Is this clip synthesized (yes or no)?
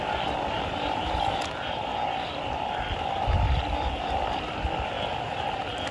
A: no